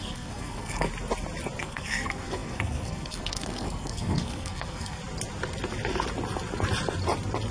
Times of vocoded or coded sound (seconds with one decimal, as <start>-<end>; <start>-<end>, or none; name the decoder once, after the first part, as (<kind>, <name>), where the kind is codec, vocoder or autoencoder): 0.0-0.9 (codec, SNAC); 1.6-5.0